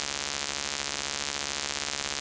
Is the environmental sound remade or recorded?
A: recorded